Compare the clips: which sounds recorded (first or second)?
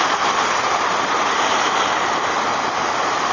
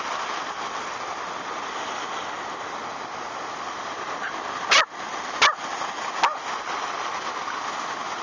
second